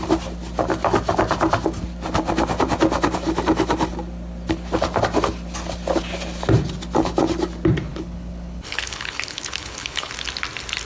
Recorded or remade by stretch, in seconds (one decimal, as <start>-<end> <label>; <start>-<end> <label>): 0.0-7.9 recorded; 7.9-10.1 remade; 10.1-10.8 recorded